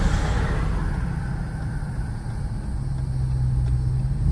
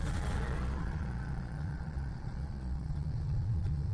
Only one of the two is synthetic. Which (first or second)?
second